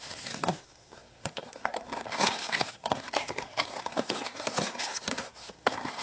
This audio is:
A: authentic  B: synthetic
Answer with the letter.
B